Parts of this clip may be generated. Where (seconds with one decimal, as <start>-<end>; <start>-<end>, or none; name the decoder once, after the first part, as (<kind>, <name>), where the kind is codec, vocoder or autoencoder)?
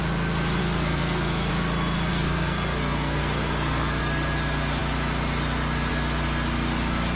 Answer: 0.6-1.5 (codec, SNAC); 2.1-4.0